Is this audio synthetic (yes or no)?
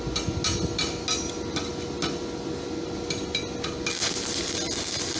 no